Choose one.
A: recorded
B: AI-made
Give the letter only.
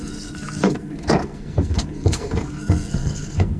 B